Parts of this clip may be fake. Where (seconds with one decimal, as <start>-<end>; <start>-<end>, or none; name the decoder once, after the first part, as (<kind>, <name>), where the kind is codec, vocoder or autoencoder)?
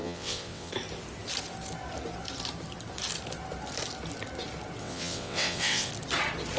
0.0-0.7 (vocoder, WaveNeXt); 4.8-5.9